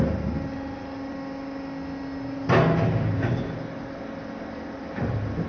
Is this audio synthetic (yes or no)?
no